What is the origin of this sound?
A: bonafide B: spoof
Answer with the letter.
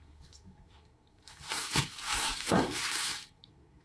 B